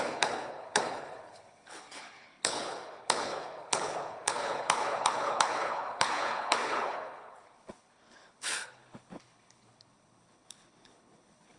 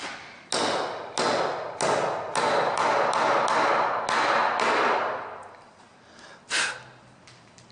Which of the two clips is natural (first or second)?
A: second